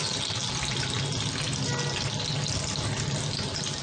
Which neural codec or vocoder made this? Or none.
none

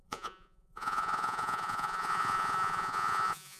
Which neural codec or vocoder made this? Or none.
vocoder, Vocos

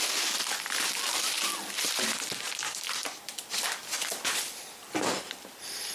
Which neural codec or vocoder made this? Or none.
none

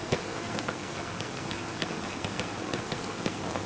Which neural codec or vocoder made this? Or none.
codec, SNAC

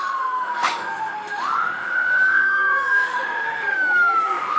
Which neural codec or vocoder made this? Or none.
autoencoder, DAC-VAE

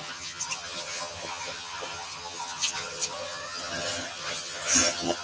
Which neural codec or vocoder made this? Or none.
vocoder, HiFi-GAN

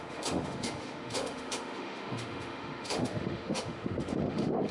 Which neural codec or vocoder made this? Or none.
autoencoder, DAC-VAE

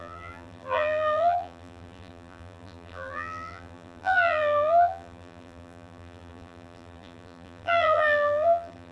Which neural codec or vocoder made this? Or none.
vocoder, BigVGAN v2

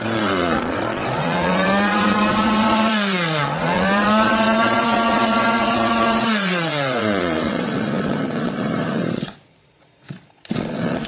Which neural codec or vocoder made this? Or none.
vocoder, Vocos